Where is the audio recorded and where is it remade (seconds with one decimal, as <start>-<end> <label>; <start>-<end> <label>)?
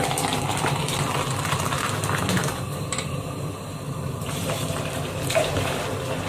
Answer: 0.0-6.3 remade